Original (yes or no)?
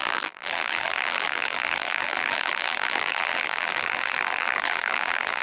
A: no